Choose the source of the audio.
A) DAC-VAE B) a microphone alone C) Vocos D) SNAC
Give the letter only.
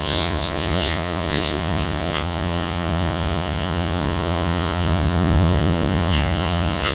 C